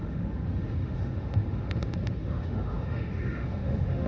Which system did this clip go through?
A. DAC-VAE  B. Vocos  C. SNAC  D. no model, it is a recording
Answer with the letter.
A